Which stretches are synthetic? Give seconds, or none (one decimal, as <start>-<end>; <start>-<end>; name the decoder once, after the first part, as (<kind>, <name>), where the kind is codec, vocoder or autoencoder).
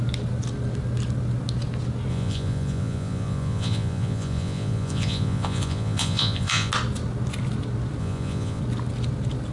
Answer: 2.1-6.7 (vocoder, Vocos); 8.0-8.6